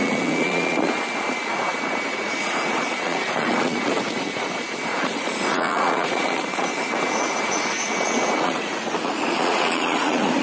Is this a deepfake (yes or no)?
yes